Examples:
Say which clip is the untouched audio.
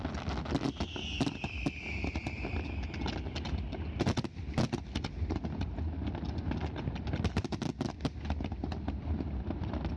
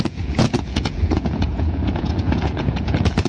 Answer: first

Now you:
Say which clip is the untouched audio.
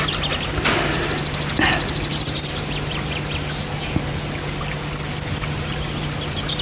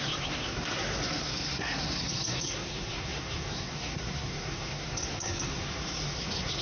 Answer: first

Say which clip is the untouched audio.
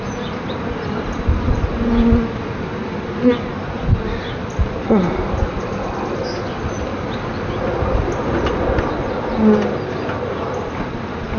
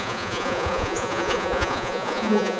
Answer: first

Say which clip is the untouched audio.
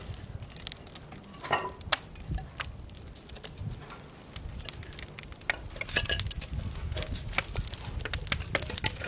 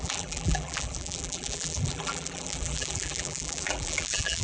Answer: first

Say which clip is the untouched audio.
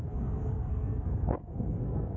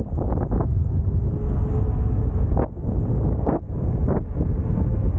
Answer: second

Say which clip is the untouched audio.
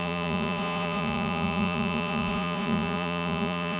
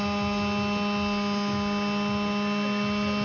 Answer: second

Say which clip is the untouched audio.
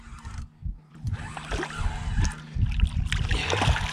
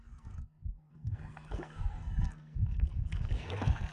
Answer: first